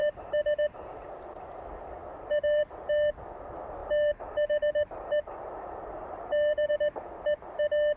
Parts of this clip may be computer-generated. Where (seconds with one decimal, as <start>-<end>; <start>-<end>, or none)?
0.0-1.6; 2.0-2.6; 3.8-6.7